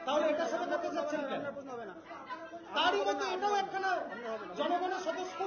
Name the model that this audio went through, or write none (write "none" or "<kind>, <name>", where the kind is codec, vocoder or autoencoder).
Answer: none